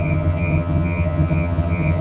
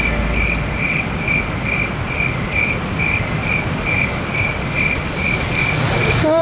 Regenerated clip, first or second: first